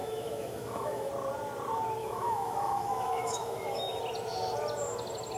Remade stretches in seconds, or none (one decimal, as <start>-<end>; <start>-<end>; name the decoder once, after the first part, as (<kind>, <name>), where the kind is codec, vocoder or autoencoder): 0.0-1.1 (autoencoder, DAC-VAE); 2.0-4.0